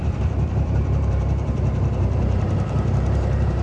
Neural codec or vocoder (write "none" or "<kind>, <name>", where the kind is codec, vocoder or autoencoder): vocoder, BigVGAN v2